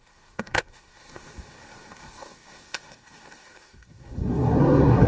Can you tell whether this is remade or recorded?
remade